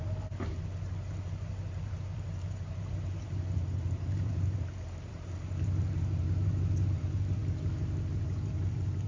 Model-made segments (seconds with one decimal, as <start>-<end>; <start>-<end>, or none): 0.0-7.4; 8.2-9.1